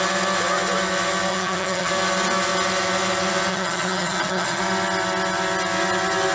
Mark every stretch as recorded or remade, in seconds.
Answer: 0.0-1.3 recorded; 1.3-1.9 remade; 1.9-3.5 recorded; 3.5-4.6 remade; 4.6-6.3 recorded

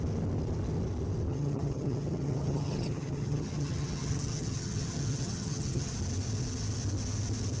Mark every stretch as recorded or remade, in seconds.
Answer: 0.0-1.3 recorded; 1.3-5.9 remade; 5.9-7.6 recorded

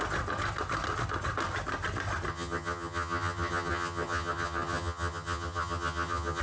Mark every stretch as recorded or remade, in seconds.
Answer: 0.0-2.3 recorded; 2.3-6.4 remade

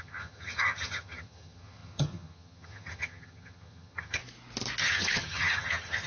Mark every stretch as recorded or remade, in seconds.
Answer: 0.0-4.2 remade; 4.2-4.8 recorded; 4.8-6.1 remade

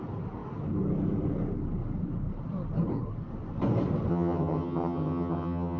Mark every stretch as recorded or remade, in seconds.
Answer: 0.0-4.1 recorded; 4.1-5.8 remade

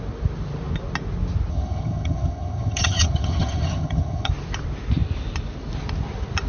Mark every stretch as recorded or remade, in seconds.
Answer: 0.0-1.5 recorded; 1.5-4.3 remade; 4.3-6.5 recorded

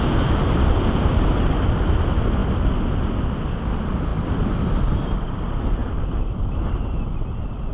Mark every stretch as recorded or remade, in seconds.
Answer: 0.0-7.7 recorded

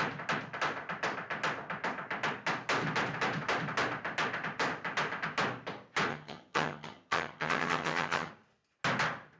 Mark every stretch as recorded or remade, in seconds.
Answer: 0.0-6.1 recorded; 6.1-8.3 remade; 8.3-9.4 recorded